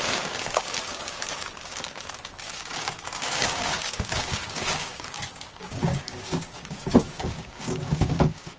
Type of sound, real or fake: fake